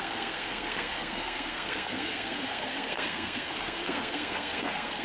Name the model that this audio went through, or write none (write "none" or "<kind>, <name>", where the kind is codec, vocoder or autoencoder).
codec, SNAC